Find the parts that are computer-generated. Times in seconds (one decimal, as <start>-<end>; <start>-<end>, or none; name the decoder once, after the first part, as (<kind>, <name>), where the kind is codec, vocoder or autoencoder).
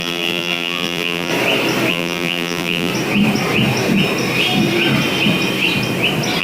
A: 0.0-1.3 (vocoder, BigVGAN v2); 1.9-2.9